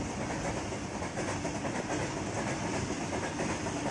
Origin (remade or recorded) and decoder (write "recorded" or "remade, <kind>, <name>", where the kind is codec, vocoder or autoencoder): recorded